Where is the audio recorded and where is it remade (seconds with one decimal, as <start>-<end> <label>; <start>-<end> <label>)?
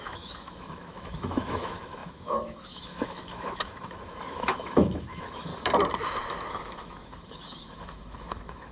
0.0-5.5 remade; 5.5-6.5 recorded; 6.5-8.7 remade